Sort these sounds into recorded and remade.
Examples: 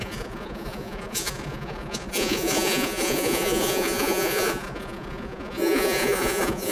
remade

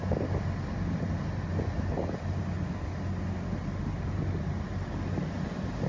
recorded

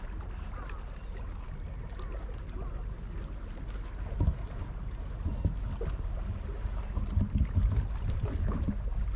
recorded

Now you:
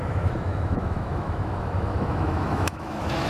remade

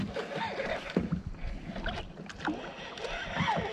recorded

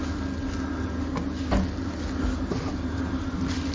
recorded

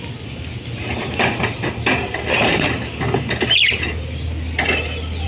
recorded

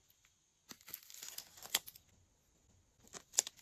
recorded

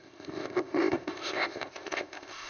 remade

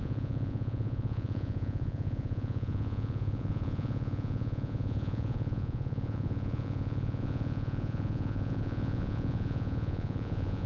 remade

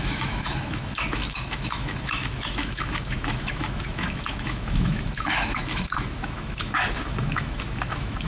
remade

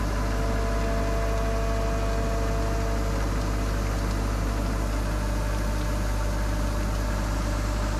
recorded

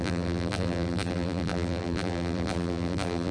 remade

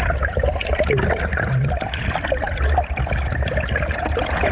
remade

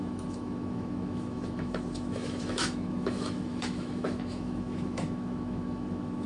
remade